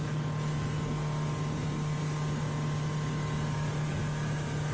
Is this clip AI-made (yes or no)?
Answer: no